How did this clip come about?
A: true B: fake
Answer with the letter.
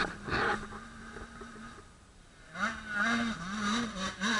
A